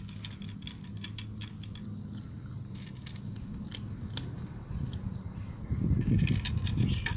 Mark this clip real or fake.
real